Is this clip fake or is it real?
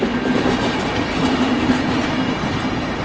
real